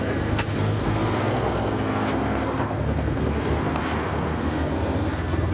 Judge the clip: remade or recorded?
remade